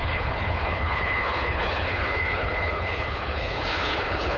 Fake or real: fake